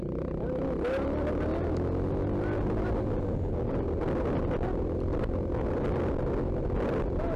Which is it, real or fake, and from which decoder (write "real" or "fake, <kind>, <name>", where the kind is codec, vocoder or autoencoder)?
real